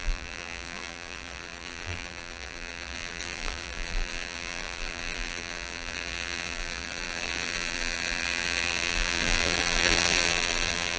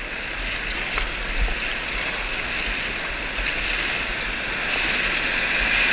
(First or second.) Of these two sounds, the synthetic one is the first